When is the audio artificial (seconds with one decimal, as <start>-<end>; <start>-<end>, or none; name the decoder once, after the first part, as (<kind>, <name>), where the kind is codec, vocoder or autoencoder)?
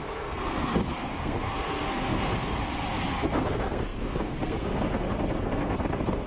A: 0.0-2.6 (codec, SNAC); 3.2-6.3